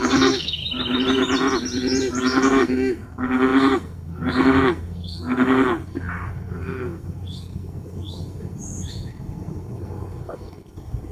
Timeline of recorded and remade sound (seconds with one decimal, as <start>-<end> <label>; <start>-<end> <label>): 0.0-0.6 remade; 0.6-2.2 recorded; 2.2-11.1 remade